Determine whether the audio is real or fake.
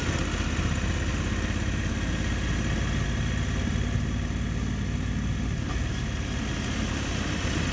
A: real